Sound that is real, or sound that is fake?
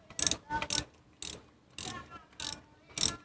real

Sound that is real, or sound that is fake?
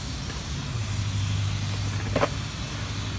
real